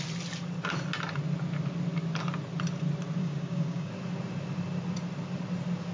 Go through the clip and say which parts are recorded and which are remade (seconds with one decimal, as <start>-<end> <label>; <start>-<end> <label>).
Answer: 0.0-3.2 recorded; 3.2-3.9 remade; 3.9-5.9 recorded